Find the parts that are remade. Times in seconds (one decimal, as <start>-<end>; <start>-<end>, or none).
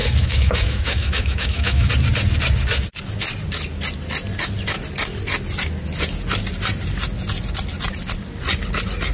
0.0-1.9